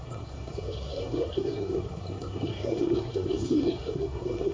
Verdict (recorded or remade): remade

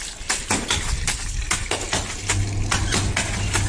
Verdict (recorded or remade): recorded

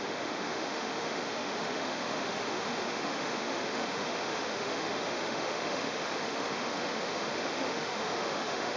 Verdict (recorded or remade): remade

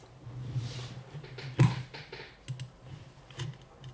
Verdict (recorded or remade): recorded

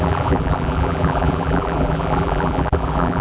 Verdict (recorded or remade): remade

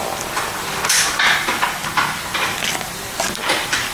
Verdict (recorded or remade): remade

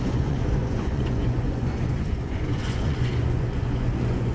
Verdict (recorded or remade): remade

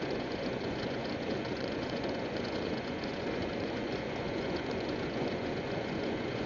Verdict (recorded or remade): remade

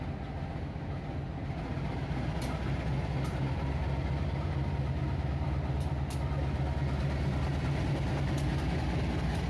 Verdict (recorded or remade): recorded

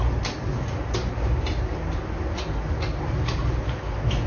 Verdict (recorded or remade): recorded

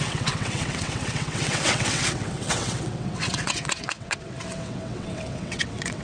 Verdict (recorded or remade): remade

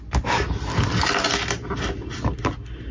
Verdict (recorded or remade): recorded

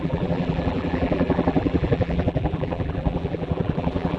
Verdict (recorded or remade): remade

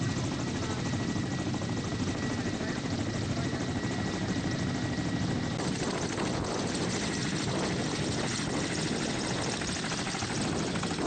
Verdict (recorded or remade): recorded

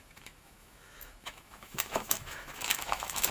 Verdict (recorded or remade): remade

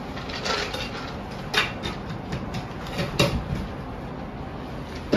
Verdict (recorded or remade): recorded